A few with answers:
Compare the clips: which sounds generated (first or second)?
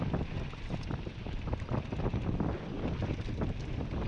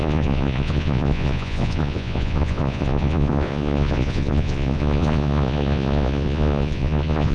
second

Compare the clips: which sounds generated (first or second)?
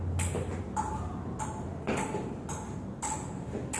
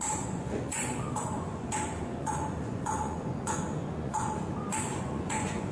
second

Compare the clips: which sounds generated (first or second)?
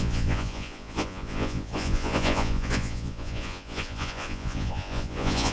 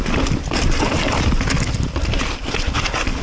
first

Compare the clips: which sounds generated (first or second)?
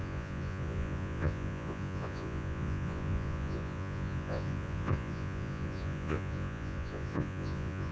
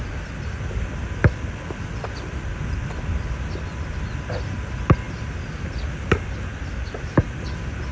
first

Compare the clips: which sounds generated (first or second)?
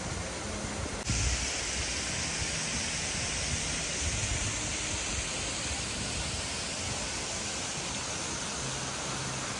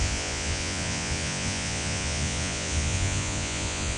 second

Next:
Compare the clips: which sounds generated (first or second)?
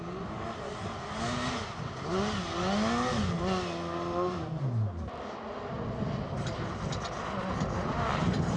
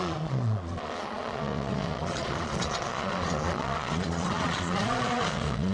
second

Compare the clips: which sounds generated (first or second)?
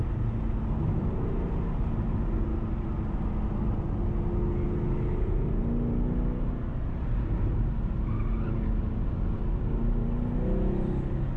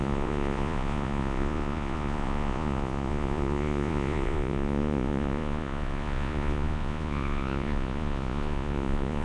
second